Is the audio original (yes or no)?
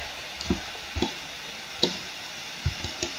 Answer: yes